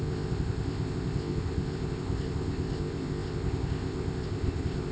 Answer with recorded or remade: remade